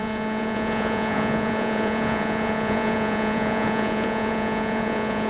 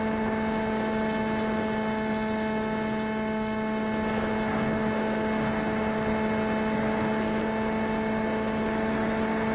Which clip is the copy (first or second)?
first